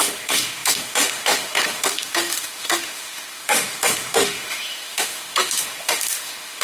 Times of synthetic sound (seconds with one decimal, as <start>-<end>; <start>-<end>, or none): 0.0-6.6